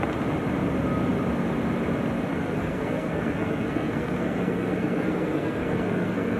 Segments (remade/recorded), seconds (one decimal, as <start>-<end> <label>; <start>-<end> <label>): 0.0-2.3 recorded; 2.3-6.4 remade